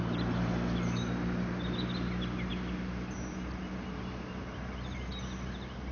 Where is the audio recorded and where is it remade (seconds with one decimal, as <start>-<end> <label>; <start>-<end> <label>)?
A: 0.0-5.9 recorded